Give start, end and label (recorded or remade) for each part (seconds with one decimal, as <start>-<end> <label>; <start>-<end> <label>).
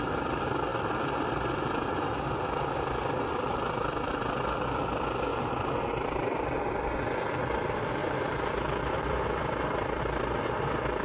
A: 0.0-0.7 recorded; 0.7-4.1 remade; 4.1-5.3 recorded; 5.3-5.9 remade; 5.9-8.0 recorded; 8.0-10.0 remade; 10.0-11.0 recorded